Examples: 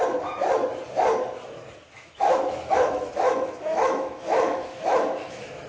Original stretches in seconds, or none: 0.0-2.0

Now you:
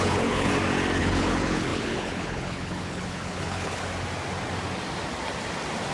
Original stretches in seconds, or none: 0.5-1.0; 3.8-5.9

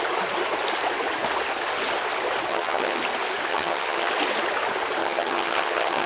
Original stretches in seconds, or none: 0.0-2.5; 3.0-3.5; 4.1-5.0

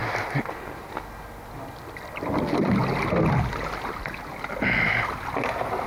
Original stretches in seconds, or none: 0.0-5.9

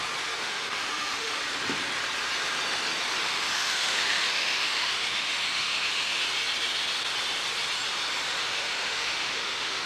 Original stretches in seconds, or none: 0.0-0.4; 1.4-3.2; 6.2-8.4

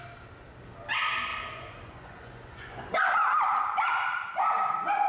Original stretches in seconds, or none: 0.0-1.3; 3.1-5.1

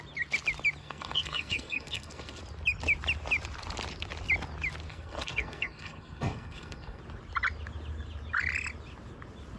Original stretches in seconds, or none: 0.0-0.8; 2.4-4.9; 7.0-9.6